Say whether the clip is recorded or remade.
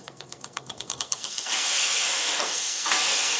remade